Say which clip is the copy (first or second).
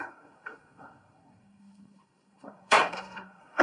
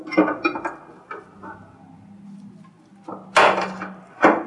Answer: first